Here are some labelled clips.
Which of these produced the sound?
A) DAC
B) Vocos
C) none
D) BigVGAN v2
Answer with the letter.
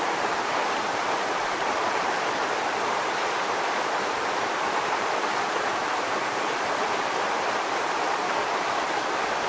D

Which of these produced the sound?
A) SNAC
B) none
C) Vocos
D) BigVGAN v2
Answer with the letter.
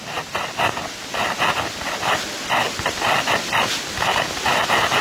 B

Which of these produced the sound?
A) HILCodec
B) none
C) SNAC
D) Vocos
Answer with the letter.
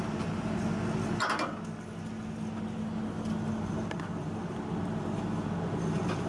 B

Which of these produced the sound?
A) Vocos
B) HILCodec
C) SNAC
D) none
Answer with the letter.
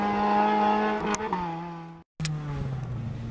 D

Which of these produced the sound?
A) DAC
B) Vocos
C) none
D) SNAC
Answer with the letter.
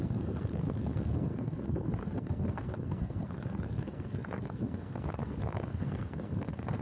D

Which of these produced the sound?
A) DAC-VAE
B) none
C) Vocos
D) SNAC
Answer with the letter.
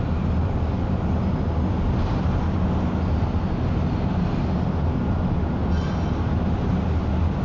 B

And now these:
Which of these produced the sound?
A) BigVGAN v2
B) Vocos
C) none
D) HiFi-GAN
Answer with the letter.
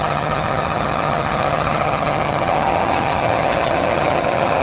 D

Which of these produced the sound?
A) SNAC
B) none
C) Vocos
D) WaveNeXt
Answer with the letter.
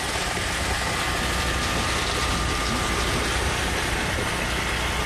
B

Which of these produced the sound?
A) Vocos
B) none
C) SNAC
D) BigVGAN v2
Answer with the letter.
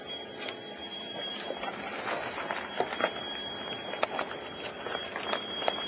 D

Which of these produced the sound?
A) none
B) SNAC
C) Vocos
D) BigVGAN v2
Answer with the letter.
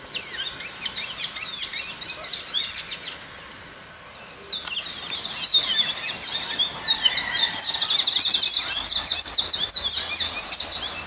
A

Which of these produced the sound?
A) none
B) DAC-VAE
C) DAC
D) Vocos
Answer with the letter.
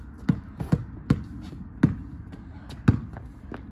A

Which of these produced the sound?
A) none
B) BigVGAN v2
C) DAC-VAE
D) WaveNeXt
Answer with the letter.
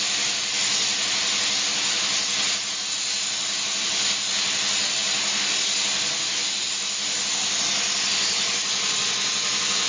A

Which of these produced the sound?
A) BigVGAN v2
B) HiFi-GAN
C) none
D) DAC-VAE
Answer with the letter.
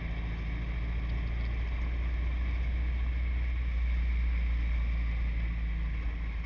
C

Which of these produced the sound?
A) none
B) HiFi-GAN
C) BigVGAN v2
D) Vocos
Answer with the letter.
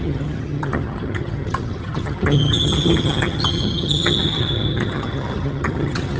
B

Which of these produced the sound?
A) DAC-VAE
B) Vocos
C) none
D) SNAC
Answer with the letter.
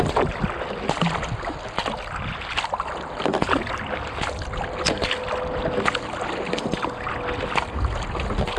C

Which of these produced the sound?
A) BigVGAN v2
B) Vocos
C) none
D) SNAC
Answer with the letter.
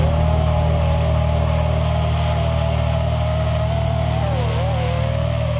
C